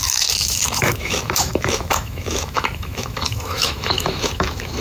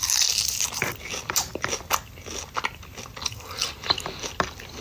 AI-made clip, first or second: first